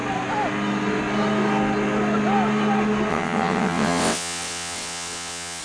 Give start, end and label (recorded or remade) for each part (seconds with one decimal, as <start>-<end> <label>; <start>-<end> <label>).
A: 0.0-3.1 recorded; 3.1-5.6 remade